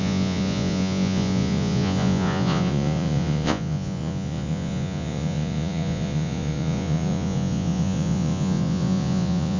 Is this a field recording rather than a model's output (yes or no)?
no